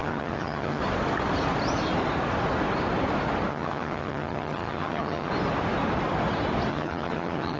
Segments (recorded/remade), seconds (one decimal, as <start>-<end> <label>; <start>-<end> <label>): 0.0-0.8 remade; 0.8-3.5 recorded; 3.5-5.3 remade; 5.3-6.7 recorded; 6.7-7.6 remade